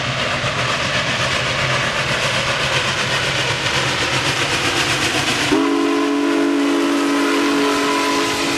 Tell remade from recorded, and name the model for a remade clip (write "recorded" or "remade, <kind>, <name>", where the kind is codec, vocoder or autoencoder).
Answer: recorded